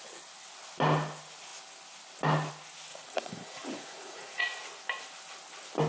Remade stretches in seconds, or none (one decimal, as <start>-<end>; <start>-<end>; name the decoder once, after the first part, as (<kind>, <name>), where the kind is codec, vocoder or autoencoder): 2.9-4.4 (vocoder, Vocos)